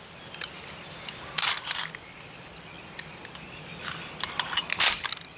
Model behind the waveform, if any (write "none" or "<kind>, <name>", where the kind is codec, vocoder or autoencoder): none